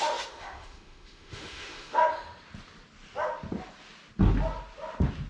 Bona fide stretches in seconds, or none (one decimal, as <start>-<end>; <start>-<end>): 2.0-5.3